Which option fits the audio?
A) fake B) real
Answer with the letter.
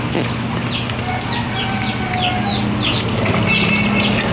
B